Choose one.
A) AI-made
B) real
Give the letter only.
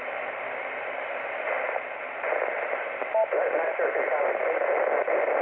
B